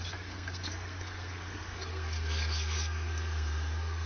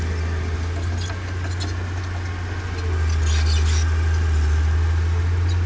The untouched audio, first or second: second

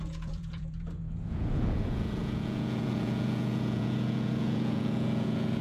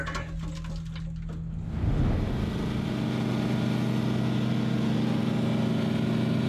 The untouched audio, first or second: second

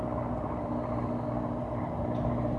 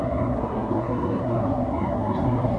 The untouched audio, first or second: first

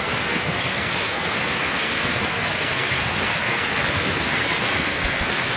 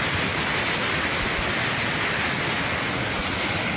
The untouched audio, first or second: second